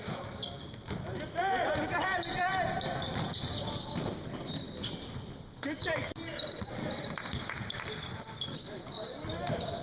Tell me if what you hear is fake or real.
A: real